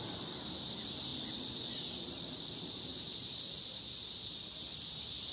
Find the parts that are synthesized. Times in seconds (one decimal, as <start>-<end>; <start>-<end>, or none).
0.0-5.3